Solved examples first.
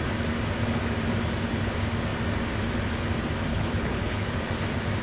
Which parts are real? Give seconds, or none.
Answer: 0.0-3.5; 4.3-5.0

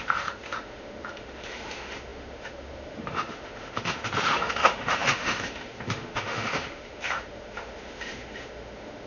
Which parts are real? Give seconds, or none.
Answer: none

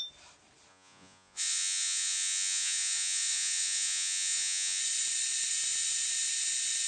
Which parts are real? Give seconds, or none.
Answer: 0.0-0.7; 4.8-6.9

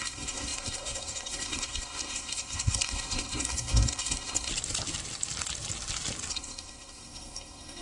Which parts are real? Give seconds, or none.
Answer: 4.5-6.3

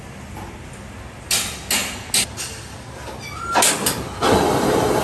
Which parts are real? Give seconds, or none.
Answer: 0.0-5.0

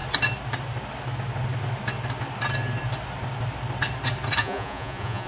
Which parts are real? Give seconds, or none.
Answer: 0.0-4.4

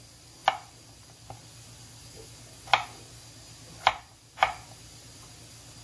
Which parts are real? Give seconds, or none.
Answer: 0.0-3.9; 4.4-5.8

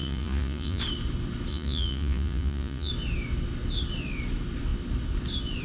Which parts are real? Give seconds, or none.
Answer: 0.8-1.5; 2.9-5.6